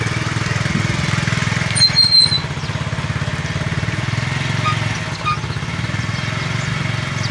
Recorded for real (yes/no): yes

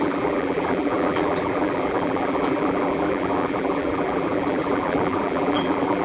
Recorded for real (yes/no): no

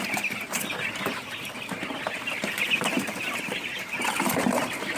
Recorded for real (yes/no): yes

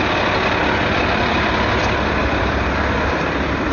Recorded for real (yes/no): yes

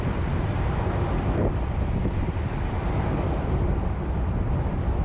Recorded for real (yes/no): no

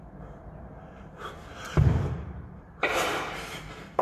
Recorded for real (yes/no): no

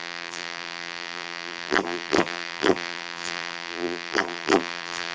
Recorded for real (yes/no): no